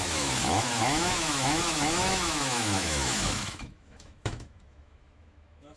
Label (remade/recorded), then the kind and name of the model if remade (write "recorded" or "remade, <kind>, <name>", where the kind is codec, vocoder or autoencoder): remade, autoencoder, DAC-VAE